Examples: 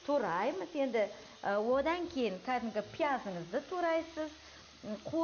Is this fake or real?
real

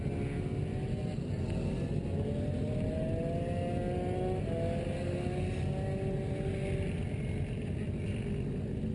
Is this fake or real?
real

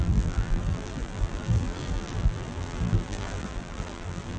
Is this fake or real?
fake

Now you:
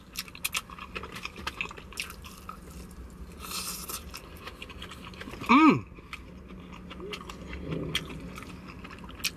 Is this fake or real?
real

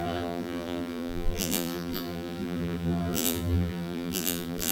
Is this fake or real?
fake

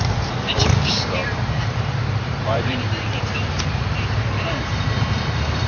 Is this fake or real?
fake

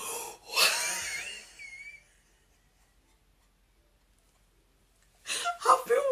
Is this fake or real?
real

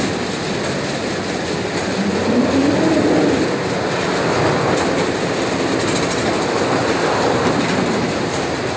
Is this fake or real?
real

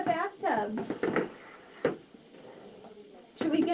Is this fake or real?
fake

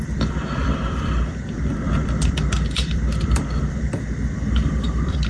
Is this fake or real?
fake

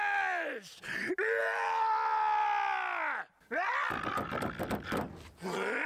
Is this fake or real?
real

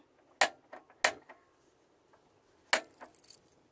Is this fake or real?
real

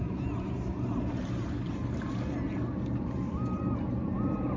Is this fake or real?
fake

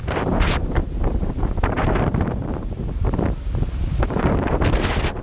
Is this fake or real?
fake